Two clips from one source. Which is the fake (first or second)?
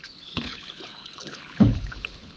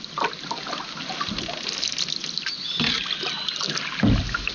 first